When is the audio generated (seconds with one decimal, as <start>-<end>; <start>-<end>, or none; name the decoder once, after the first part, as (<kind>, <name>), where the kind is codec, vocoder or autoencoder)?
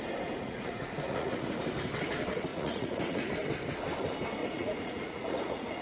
0.4-1.6 (vocoder, Vocos); 2.5-3.3; 4.4-5.8